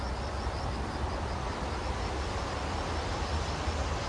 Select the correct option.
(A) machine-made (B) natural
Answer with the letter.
B